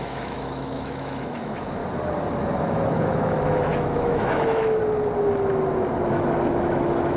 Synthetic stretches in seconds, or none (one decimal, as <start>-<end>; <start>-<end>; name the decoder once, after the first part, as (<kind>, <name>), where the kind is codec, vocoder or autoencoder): 0.0-1.8 (autoencoder, DAC-VAE); 2.6-4.8; 6.0-7.2